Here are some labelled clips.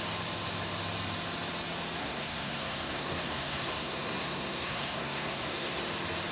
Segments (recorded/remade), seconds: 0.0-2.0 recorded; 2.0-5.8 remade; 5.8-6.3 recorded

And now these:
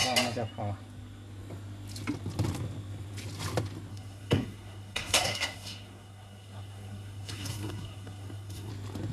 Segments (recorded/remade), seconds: 0.0-3.9 recorded; 3.9-8.7 remade; 8.7-9.1 recorded

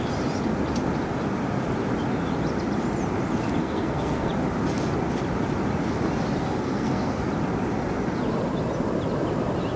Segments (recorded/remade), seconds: 0.0-3.6 recorded; 3.6-4.3 remade; 4.3-6.4 recorded; 6.4-7.2 remade; 7.2-9.8 recorded